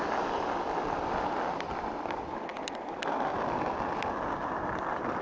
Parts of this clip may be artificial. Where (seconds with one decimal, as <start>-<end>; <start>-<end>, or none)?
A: none